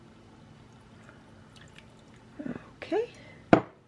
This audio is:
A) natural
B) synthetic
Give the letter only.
A